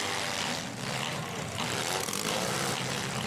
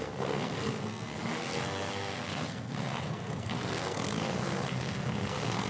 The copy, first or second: second